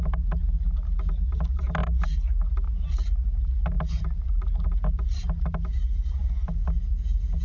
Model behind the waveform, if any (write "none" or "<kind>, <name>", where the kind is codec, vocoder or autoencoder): none